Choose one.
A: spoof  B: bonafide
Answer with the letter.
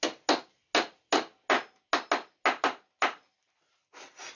B